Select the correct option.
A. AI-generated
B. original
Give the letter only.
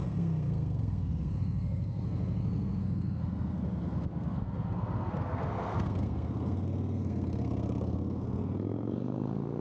A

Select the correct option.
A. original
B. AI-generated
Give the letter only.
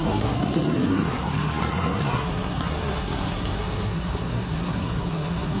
B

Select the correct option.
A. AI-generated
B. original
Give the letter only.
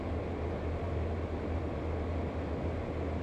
B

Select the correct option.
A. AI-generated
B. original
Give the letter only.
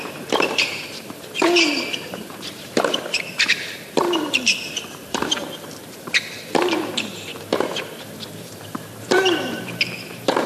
A